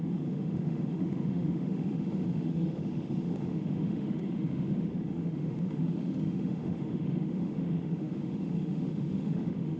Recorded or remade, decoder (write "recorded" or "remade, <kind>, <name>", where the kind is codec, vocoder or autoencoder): remade, autoencoder, DAC-VAE